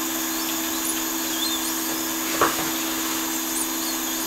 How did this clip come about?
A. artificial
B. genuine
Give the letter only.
B